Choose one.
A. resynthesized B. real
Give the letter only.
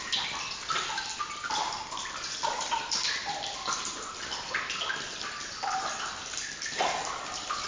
B